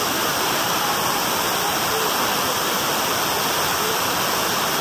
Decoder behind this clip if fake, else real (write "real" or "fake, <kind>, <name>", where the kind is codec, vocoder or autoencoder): fake, vocoder, BigVGAN v2